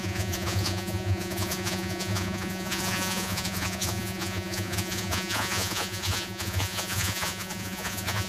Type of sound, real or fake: fake